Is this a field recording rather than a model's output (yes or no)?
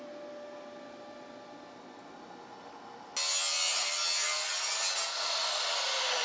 yes